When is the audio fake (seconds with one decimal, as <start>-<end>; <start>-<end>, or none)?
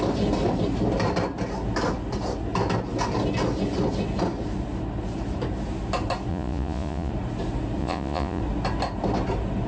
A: 6.3-7.1; 7.8-8.4